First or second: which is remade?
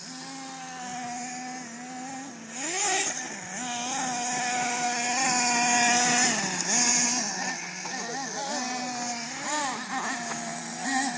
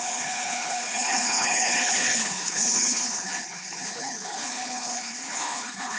second